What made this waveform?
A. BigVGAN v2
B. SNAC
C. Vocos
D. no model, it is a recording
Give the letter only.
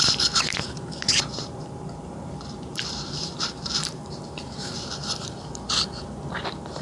A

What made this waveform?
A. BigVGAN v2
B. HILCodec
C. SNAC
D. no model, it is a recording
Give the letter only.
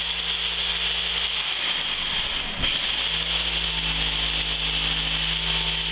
D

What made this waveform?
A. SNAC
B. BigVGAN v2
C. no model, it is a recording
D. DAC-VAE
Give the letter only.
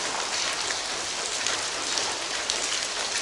C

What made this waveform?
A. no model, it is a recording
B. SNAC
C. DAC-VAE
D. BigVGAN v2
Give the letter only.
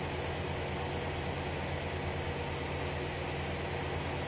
A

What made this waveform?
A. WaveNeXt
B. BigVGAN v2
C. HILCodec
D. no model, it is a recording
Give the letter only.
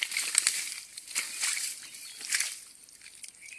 D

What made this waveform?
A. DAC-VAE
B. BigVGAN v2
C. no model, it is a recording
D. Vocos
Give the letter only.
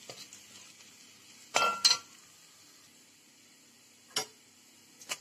C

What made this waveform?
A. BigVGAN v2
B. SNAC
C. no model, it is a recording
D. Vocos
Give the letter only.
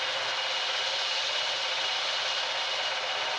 C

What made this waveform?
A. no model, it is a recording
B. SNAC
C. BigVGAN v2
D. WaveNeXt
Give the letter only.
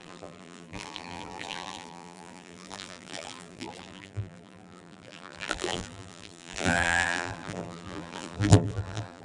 C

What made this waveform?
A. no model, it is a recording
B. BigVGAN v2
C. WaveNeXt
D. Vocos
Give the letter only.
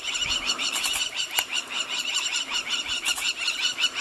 B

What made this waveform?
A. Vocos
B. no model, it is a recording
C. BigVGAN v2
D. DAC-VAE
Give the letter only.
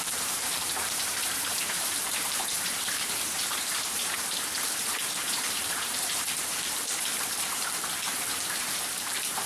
C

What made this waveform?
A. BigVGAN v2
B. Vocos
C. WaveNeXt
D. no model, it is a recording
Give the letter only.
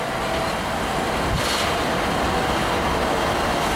D